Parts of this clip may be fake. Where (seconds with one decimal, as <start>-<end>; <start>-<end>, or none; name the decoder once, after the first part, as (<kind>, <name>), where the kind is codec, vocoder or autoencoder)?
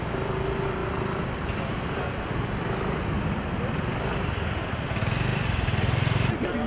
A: 5.3-6.3 (vocoder, BigVGAN v2)